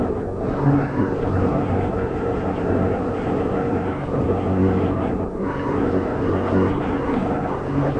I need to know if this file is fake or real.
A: fake